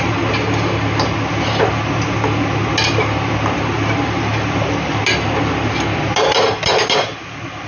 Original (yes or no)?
yes